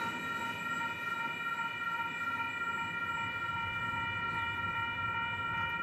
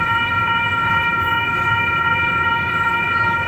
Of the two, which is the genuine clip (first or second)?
first